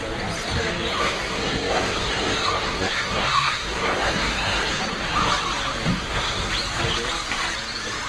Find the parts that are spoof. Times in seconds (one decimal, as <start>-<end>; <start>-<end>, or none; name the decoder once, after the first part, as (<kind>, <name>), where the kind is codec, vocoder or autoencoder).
0.9-4.8 (codec, SNAC); 5.9-6.5